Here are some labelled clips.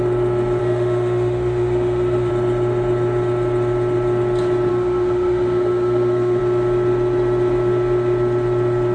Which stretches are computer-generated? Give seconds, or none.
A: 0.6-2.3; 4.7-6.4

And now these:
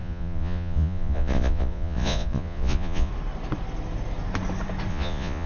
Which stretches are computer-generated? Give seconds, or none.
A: 0.0-3.1; 4.9-5.5

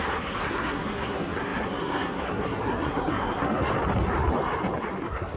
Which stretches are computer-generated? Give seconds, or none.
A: 0.0-3.7; 5.0-5.4

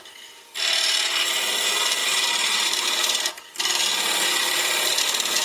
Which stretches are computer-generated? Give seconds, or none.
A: 2.0-3.3; 4.4-4.9

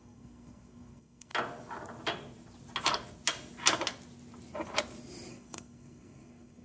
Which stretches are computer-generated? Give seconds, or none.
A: 0.0-1.3; 5.3-6.6

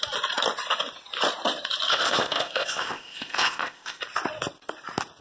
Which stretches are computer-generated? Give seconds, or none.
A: 1.9-4.0

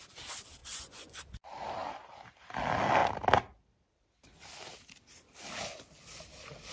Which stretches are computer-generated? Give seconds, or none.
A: 0.6-1.2

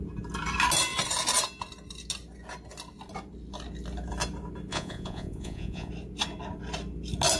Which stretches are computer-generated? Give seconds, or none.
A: 4.7-5.9